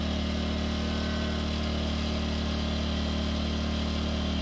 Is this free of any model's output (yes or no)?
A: yes